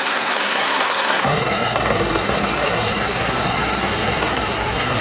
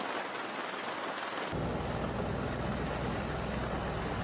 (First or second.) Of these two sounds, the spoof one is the first